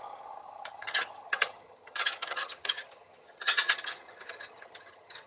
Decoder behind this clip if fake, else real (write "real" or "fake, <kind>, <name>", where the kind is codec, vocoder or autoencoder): fake, vocoder, HiFi-GAN